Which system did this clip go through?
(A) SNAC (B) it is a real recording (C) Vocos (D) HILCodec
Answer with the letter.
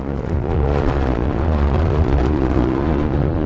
C